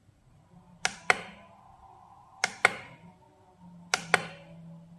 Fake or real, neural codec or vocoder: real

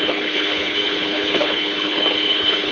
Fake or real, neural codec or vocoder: fake, codec, HILCodec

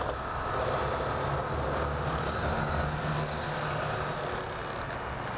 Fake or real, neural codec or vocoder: real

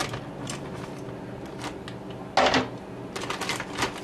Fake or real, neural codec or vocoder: real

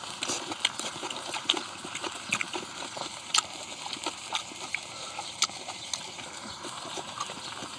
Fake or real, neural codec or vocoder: fake, vocoder, BigVGAN v2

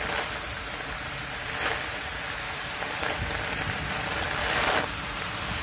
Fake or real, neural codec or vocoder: real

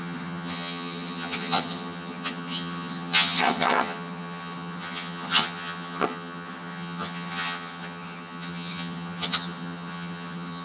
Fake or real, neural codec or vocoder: fake, vocoder, HiFi-GAN